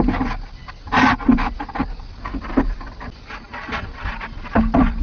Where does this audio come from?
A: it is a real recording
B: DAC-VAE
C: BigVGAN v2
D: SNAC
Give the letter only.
A